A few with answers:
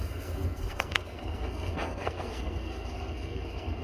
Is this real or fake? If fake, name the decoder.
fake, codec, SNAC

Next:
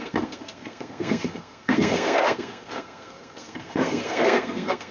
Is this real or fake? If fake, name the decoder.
fake, codec, SNAC